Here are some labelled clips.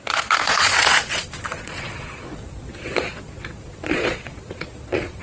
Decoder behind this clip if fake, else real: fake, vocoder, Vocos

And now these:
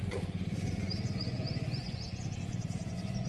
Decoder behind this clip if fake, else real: fake, vocoder, Vocos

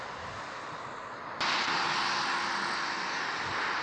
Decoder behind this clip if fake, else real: real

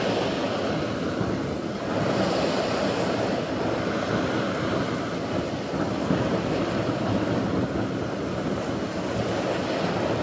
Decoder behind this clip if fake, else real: real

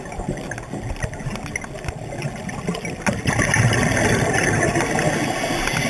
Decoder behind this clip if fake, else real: real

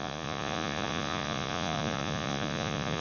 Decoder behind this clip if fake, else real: fake, vocoder, Vocos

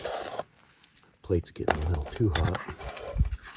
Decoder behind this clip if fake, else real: real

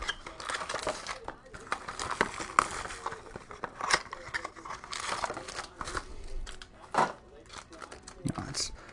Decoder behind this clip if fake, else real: real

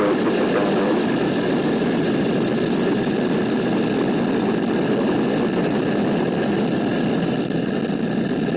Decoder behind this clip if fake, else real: real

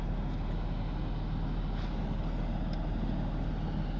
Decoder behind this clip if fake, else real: real